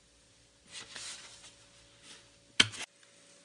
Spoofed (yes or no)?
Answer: no